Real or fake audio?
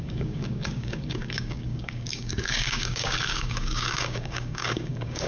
fake